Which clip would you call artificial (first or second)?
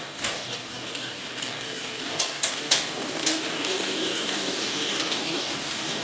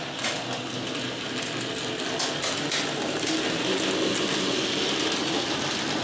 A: first